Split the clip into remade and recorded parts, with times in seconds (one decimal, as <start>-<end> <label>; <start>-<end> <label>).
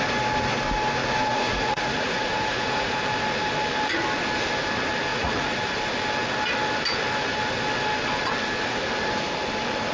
0.0-1.0 recorded; 1.0-3.0 remade; 3.0-5.1 recorded; 5.1-5.6 remade; 5.6-9.9 recorded